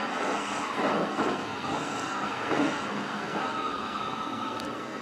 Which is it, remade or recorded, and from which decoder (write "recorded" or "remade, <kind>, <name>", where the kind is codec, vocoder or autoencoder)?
remade, codec, SNAC